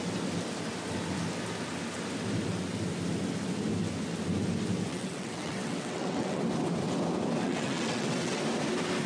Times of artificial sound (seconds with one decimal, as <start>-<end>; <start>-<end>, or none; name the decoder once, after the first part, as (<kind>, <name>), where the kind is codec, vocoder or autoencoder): 4.9-6.4 (vocoder, WaveNeXt); 7.4-8.4